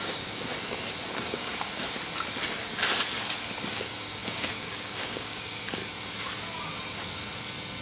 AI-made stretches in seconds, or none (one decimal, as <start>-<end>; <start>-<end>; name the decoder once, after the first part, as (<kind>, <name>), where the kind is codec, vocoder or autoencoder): 0.0-0.5 (codec, DAC); 1.1-1.5; 3.7-5.8